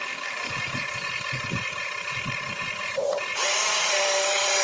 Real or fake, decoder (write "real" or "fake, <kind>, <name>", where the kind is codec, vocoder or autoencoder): fake, vocoder, BigVGAN v2